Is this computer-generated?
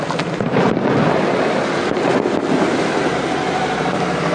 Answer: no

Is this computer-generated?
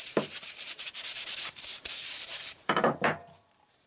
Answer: yes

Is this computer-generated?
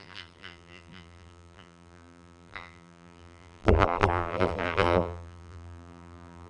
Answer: yes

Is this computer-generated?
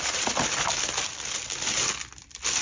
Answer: no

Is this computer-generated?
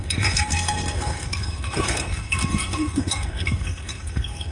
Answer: yes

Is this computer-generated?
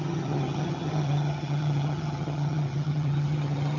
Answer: yes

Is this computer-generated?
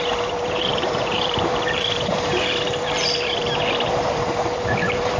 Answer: yes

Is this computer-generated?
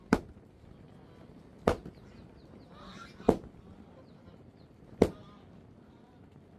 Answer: no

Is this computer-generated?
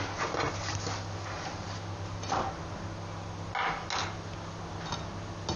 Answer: no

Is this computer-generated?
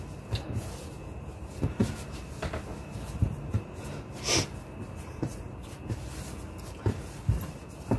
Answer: no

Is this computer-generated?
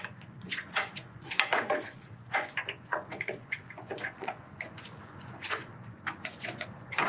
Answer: yes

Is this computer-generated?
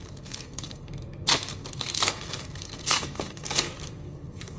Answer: yes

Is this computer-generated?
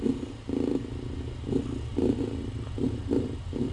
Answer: no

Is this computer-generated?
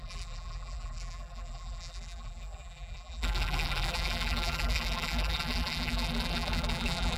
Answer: yes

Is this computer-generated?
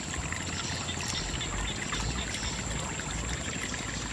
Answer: no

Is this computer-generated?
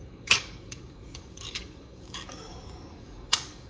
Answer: yes